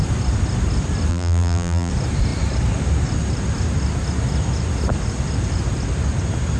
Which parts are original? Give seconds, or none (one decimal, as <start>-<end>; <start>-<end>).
0.0-1.1; 1.9-6.6